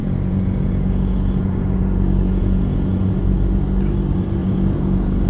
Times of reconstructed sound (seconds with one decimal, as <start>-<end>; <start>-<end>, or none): 0.0-3.2; 4.4-5.3